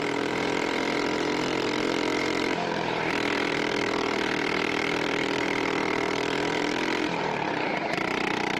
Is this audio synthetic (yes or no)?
yes